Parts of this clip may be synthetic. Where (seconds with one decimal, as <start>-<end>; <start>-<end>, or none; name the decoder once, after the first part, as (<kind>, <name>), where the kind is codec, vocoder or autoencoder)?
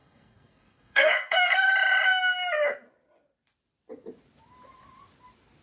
0.0-1.7 (codec, SNAC)